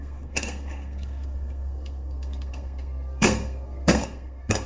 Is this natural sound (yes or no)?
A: no